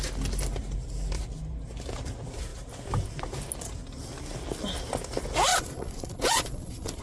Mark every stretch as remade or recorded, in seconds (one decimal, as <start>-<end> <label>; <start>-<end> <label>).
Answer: 0.0-5.5 recorded; 5.5-7.0 remade